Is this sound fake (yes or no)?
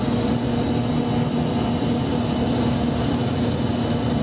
no